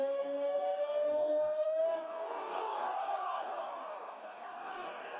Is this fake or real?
fake